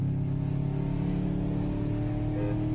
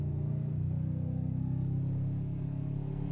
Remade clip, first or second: second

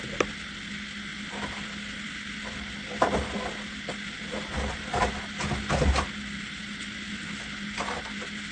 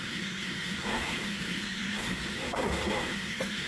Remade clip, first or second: second